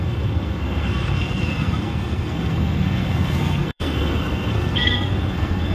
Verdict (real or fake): fake